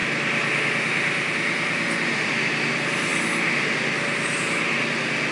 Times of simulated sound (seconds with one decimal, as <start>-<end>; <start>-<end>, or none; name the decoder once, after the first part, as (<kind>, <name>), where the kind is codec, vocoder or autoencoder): none